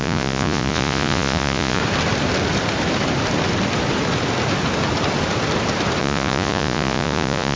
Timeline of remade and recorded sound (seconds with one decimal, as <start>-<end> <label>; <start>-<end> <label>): 0.0-1.8 remade; 1.8-6.0 recorded; 6.0-7.6 remade